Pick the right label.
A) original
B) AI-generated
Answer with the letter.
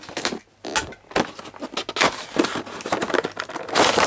A